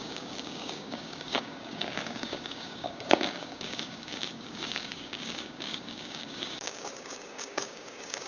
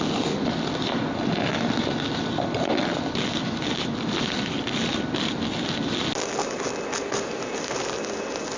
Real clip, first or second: second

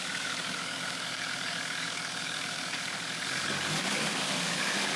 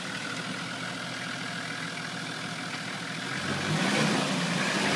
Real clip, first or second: second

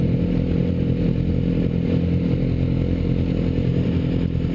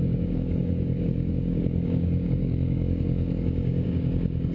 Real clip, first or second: first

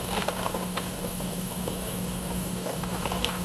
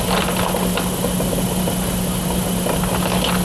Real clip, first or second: second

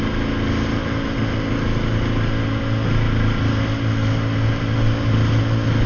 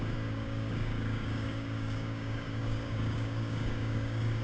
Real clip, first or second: first